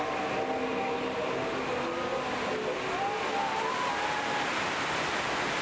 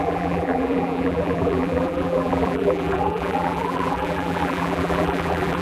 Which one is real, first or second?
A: first